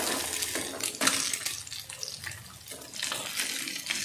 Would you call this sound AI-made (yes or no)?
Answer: no